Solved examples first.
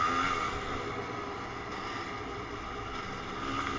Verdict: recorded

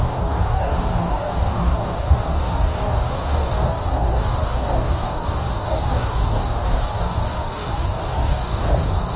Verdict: remade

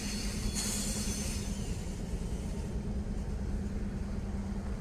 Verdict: recorded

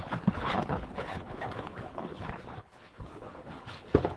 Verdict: remade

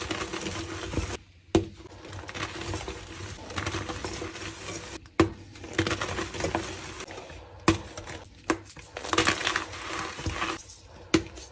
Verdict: recorded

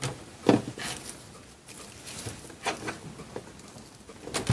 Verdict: recorded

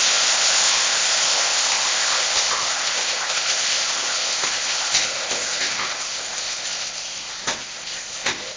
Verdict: remade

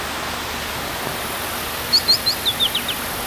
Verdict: recorded